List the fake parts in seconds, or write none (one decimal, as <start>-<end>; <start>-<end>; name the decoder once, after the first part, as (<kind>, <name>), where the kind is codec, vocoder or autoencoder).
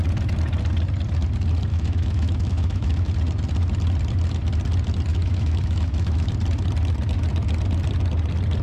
1.7-3.1 (autoencoder, DAC-VAE); 5.1-6.3